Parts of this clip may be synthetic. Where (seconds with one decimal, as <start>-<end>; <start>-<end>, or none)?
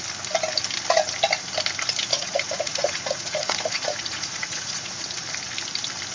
2.1-5.0